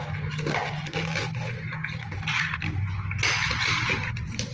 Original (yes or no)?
yes